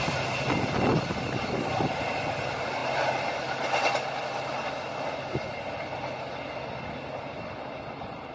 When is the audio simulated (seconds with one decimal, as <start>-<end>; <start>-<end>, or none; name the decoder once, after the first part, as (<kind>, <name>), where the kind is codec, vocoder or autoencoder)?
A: none